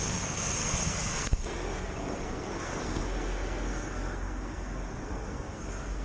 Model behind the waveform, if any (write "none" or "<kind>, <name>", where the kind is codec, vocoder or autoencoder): codec, SNAC